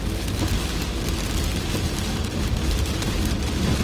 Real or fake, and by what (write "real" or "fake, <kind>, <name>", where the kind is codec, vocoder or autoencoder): real